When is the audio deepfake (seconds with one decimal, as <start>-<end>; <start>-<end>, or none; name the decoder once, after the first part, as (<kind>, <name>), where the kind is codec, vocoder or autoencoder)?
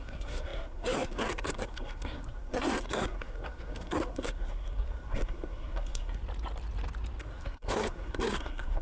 0.0-6.2 (codec, SNAC); 7.2-8.8